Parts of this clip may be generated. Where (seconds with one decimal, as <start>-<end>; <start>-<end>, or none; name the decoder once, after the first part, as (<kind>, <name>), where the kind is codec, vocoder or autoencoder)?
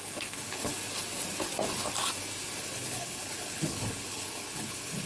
0.0-0.7 (codec, HILCodec); 2.6-5.1